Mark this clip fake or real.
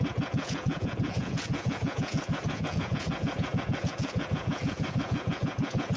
fake